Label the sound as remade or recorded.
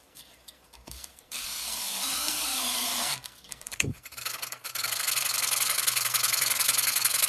remade